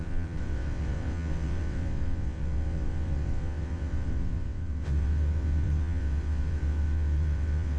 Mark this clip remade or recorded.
remade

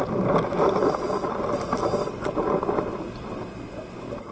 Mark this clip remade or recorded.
recorded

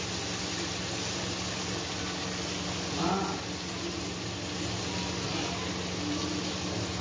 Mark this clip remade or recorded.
recorded